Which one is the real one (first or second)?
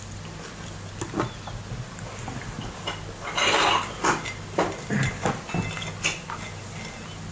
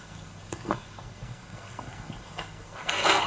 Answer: first